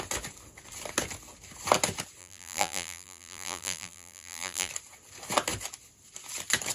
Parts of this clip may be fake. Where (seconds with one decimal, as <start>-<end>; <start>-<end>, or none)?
2.2-4.7